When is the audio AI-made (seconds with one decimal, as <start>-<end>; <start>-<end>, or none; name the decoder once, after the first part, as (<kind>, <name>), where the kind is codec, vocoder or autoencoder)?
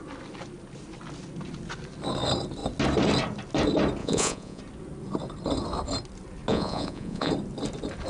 4.0-4.6 (vocoder, Vocos); 6.5-7.3